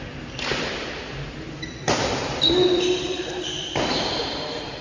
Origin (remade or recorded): remade